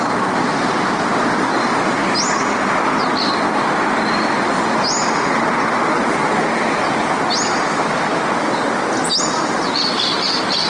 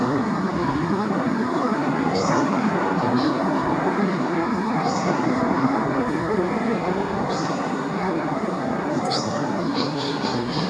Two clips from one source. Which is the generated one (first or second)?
second